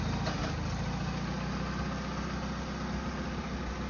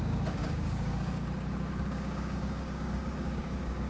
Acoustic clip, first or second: first